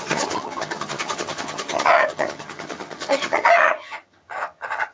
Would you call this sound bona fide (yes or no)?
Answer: no